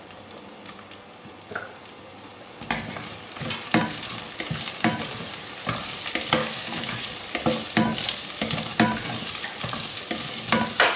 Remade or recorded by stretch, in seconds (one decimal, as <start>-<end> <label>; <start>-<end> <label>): 0.0-6.4 recorded; 6.4-7.0 remade; 7.0-11.0 recorded